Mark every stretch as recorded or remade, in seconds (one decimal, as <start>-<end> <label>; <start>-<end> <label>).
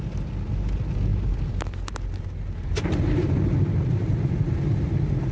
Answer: 0.0-5.3 recorded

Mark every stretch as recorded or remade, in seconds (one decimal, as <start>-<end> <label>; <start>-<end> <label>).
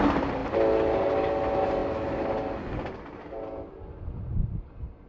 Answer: 0.0-5.1 recorded